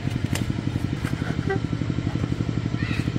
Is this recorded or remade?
recorded